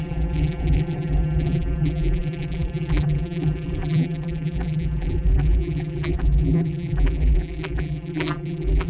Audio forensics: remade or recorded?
remade